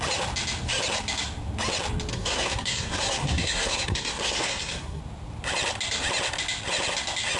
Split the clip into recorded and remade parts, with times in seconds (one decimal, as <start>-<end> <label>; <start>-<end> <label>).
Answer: 0.0-2.1 recorded; 2.1-5.0 remade; 5.0-7.4 recorded